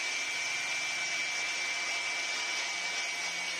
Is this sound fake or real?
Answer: real